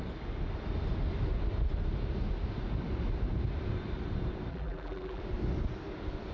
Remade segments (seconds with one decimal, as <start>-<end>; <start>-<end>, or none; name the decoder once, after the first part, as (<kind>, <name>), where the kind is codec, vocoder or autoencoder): 4.5-5.2 (vocoder, BigVGAN v2)

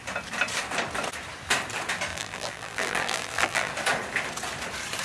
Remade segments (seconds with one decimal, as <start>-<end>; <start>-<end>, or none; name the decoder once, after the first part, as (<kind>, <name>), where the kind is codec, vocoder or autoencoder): 2.1-3.7 (vocoder, BigVGAN v2)